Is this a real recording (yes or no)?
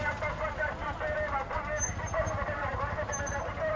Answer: yes